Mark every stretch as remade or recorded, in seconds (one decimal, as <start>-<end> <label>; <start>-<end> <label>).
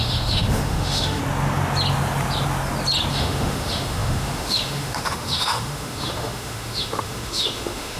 0.0-1.2 remade; 1.2-3.1 recorded; 3.1-8.0 remade